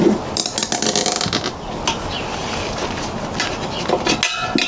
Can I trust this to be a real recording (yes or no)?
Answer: yes